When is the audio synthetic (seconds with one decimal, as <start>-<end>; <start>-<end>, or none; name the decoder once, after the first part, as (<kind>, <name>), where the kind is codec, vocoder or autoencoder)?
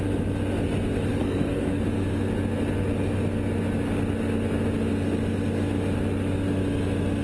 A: 1.1-1.8 (codec, SNAC)